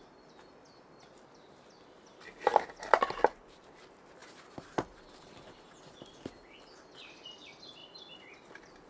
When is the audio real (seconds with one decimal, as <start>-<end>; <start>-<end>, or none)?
0.0-7.8; 8.5-8.9